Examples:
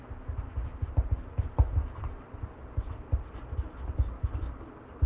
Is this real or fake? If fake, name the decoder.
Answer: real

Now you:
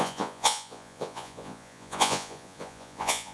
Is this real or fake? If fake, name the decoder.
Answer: fake, vocoder, Vocos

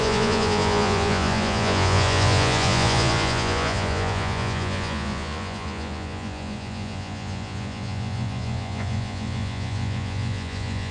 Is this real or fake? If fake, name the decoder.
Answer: fake, vocoder, Vocos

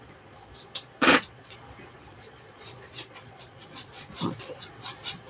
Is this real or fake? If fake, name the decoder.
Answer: fake, vocoder, Vocos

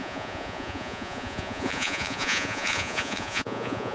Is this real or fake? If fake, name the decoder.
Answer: fake, vocoder, Vocos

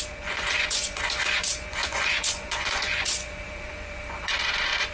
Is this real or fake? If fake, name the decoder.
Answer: fake, vocoder, Vocos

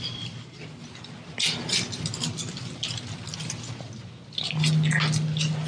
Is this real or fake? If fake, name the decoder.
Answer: real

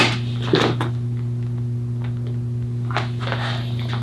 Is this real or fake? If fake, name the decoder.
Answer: real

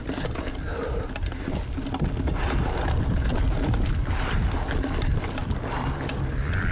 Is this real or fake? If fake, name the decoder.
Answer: real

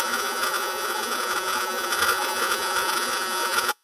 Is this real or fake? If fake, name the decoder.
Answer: fake, vocoder, Vocos